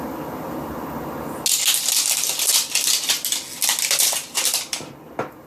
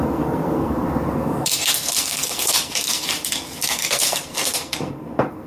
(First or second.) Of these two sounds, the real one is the first